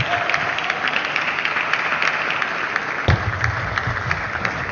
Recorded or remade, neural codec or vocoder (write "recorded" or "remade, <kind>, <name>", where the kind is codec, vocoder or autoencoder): recorded